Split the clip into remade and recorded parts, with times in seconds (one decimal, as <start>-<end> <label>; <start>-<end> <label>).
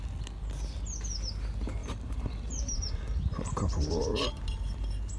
0.0-1.8 recorded; 1.8-2.9 remade; 2.9-5.2 recorded